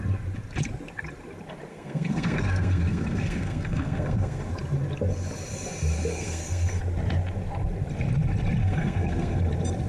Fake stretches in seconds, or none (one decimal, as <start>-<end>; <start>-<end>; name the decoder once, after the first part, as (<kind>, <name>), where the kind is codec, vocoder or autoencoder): 1.7-4.5 (codec, SNAC); 6.1-6.8; 8.6-9.4